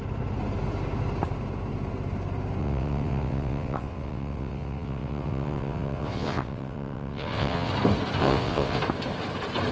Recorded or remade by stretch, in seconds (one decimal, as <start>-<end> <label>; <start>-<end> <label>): 0.0-2.6 recorded; 2.6-7.7 remade; 7.7-8.2 recorded; 8.2-8.8 remade; 8.8-9.7 recorded